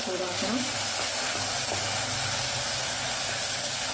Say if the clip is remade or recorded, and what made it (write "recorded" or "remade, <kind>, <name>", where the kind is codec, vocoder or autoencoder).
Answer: recorded